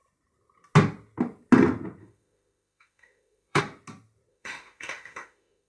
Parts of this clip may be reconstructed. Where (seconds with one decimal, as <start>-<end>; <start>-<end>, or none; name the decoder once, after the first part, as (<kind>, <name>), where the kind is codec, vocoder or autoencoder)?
2.0-3.6 (autoencoder, DAC-VAE); 4.3-5.7